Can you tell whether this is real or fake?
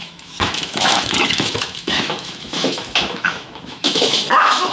fake